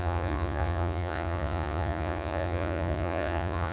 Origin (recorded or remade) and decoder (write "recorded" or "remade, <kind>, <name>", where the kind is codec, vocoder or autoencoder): remade, vocoder, Vocos